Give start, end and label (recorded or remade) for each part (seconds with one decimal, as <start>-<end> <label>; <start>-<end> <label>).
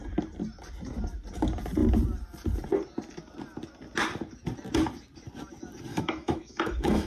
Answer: 0.0-5.9 recorded; 5.9-7.1 remade